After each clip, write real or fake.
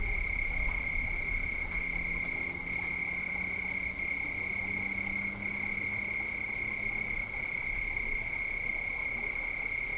real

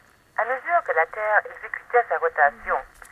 real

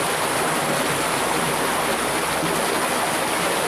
real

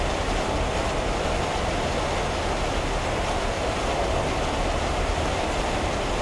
real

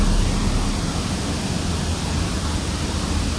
real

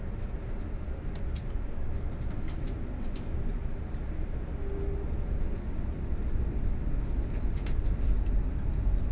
real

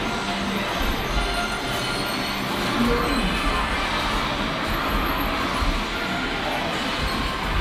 real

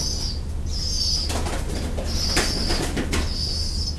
real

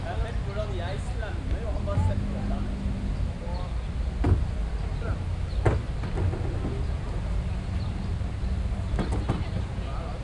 real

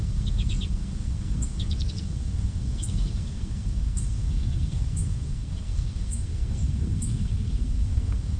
fake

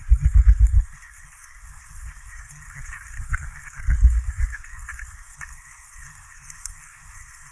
fake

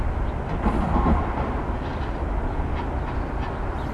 real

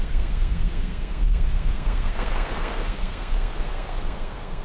fake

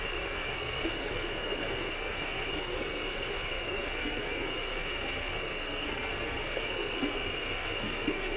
fake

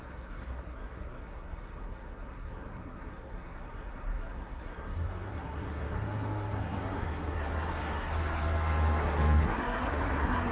fake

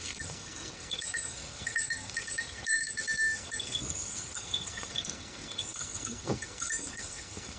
fake